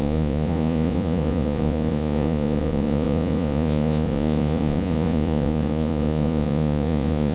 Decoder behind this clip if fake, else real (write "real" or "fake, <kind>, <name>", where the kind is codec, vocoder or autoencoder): fake, vocoder, Vocos